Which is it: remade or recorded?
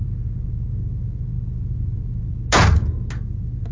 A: recorded